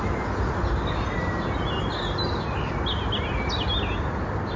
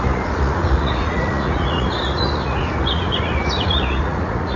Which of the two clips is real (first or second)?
first